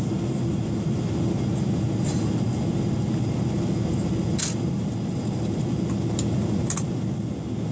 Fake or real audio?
real